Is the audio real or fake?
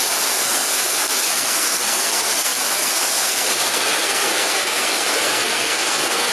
fake